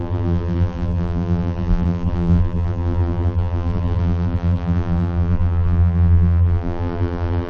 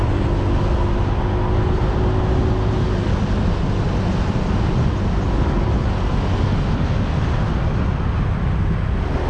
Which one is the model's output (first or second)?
first